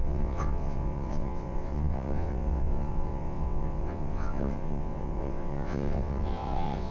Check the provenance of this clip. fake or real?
fake